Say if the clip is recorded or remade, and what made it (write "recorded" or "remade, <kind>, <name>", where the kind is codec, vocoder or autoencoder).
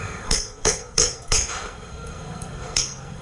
remade, codec, SNAC